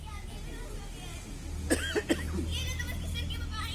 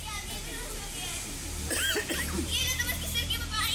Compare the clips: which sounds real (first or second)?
first